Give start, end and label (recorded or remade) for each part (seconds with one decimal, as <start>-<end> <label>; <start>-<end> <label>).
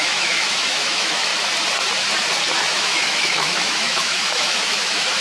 0.0-1.3 remade; 1.3-2.7 recorded; 2.7-5.2 remade